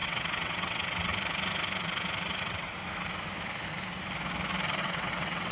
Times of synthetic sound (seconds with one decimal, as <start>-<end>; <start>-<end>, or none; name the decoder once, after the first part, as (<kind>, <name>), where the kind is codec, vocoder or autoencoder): 0.0-1.1 (vocoder, WaveNeXt); 2.4-2.8; 4.8-5.5